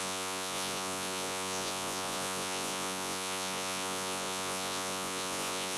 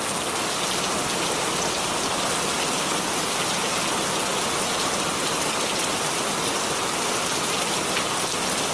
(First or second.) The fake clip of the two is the first